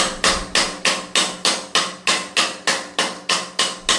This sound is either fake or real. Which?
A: real